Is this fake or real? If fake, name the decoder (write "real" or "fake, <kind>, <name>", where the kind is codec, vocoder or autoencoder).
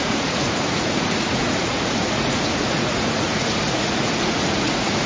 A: fake, vocoder, Vocos